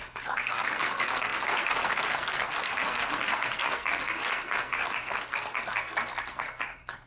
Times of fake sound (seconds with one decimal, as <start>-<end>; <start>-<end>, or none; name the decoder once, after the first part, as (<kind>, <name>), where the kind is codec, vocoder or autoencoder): 0.0-7.1 (codec, SNAC)

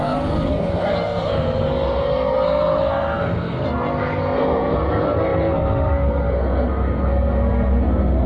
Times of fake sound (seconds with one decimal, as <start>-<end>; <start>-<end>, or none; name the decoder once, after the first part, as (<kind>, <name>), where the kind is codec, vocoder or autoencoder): 0.0-8.3 (codec, SNAC)

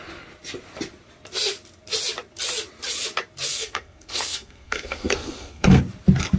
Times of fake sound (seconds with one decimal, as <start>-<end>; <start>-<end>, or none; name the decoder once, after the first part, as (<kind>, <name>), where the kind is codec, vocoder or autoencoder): 3.5-5.8 (codec, SNAC)